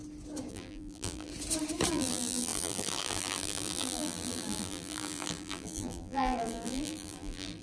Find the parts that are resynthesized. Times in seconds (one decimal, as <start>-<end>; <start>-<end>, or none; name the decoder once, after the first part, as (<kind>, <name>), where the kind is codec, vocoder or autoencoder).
0.5-1.3 (vocoder, BigVGAN v2); 1.9-7.6